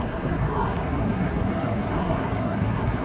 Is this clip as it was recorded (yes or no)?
no